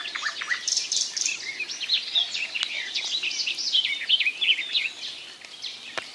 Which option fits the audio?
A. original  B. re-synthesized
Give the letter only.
A